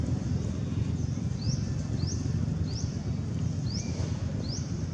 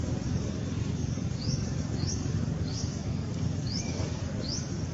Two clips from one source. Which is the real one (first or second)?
first